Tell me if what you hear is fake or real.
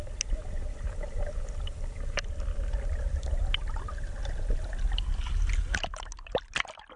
real